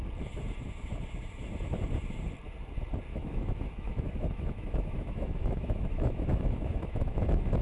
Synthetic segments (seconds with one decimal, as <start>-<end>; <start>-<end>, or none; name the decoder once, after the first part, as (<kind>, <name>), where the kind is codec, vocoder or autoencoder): 3.1-7.6 (autoencoder, DAC-VAE)